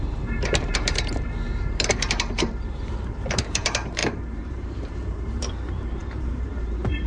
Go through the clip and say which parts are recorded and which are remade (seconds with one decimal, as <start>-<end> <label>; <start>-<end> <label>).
0.0-7.1 remade